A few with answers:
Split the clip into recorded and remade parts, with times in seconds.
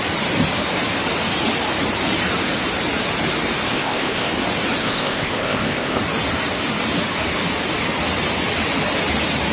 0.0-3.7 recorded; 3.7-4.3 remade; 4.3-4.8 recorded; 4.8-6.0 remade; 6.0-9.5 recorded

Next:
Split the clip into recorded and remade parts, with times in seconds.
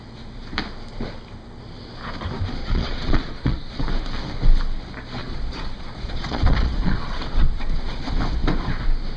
0.0-2.6 recorded; 2.6-3.8 remade; 3.8-5.2 recorded; 5.2-8.2 remade; 8.2-9.2 recorded